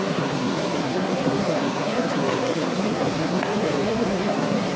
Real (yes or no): no